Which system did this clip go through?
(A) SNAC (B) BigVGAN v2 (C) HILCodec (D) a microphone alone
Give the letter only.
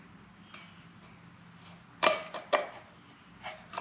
D